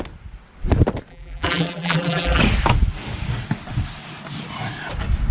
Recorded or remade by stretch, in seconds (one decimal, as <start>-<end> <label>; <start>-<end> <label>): 0.0-1.1 recorded; 1.1-2.4 remade; 2.4-5.3 recorded